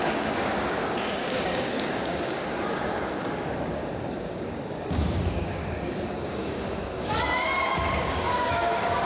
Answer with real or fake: fake